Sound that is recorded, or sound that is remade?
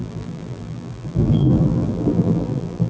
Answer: remade